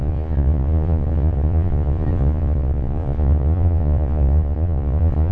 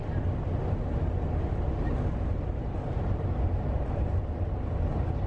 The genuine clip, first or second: second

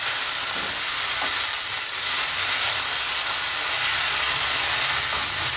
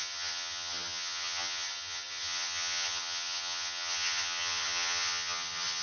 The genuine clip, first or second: first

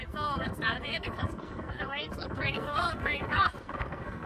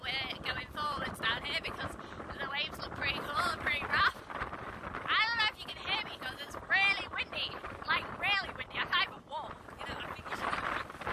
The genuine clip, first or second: second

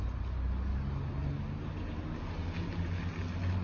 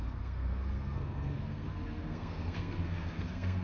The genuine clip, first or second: first